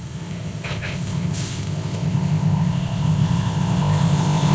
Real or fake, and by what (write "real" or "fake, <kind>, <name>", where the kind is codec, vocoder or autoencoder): fake, codec, ZipCodec